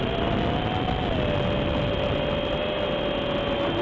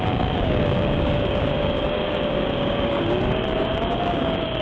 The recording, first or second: first